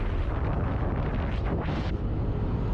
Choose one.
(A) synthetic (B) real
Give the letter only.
B